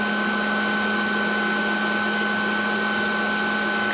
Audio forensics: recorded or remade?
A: recorded